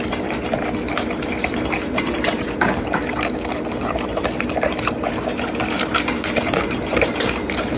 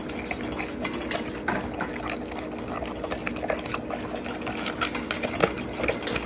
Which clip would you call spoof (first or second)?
first